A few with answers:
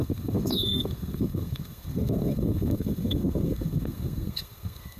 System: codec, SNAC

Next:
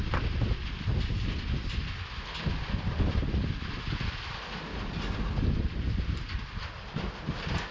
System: none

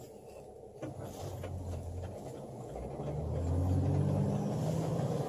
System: none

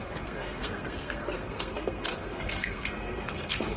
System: codec, SNAC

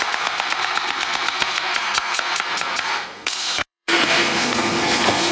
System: codec, SNAC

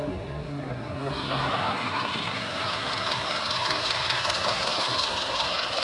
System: codec, SNAC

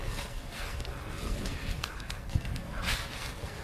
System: codec, SNAC